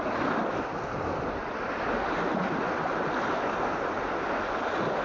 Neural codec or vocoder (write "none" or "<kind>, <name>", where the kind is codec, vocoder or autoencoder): none